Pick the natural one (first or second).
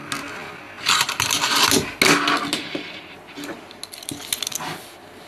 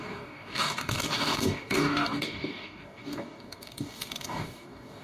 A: first